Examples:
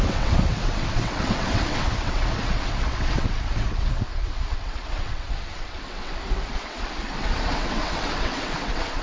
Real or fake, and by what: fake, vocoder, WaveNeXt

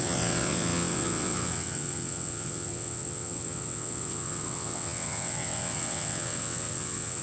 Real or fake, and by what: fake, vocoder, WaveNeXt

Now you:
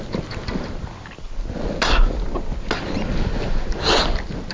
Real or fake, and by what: real